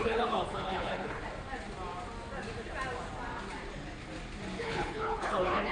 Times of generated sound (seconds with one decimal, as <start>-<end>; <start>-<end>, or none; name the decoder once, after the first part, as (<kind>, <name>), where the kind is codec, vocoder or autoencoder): 0.0-1.2 (codec, HILCodec); 4.6-5.7